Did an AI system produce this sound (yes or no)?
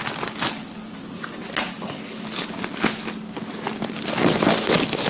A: no